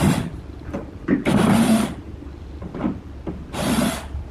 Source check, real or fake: real